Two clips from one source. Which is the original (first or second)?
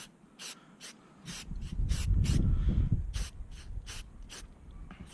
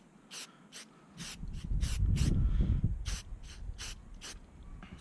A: second